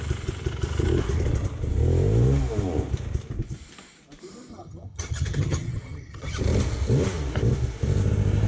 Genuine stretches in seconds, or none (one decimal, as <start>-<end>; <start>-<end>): 0.0-4.5; 6.4-8.5